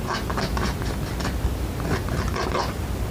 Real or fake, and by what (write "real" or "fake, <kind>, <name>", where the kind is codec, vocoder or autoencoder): fake, vocoder, BigVGAN v2